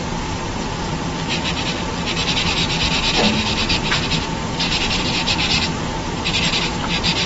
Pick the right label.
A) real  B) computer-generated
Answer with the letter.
A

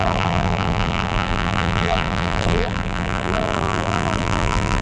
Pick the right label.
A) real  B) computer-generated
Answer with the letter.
B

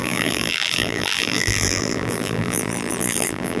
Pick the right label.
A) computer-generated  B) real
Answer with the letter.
A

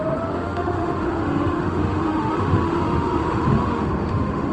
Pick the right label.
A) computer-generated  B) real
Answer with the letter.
A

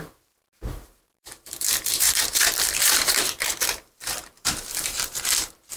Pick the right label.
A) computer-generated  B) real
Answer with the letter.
A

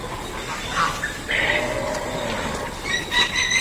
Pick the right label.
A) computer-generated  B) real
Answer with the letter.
B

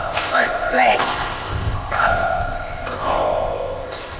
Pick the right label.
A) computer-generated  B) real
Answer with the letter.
A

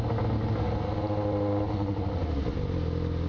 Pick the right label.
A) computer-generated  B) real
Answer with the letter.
B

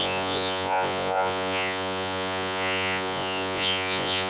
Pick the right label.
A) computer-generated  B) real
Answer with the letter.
A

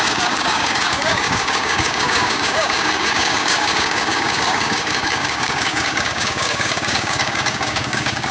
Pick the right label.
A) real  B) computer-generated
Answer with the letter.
B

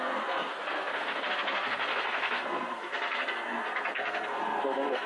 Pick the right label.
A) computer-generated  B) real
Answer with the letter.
A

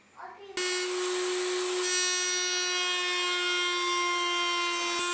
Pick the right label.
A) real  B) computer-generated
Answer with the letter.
A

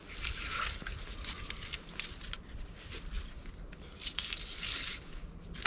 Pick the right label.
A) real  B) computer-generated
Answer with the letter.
A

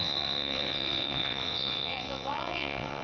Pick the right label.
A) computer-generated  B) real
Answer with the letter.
A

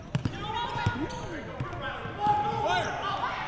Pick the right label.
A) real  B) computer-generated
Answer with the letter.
A